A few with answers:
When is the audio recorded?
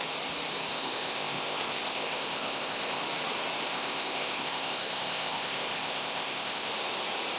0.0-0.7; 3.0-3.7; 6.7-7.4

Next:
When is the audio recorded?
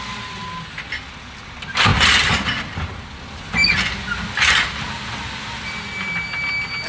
0.0-6.9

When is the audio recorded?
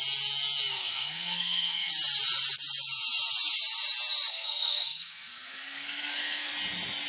0.0-0.7; 1.9-4.3; 6.5-7.1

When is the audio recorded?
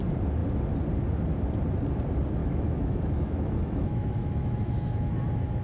0.0-2.4; 5.1-5.6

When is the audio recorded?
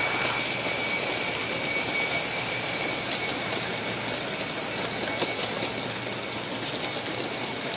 0.0-1.4; 3.8-7.8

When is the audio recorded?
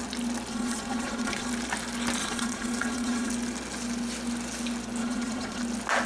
0.0-0.5; 1.5-2.2; 3.3-5.0; 5.6-6.1